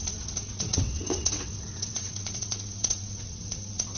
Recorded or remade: remade